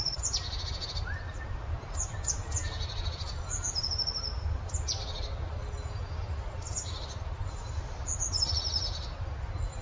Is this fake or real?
real